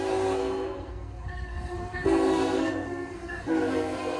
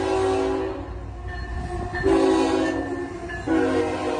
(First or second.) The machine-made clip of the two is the first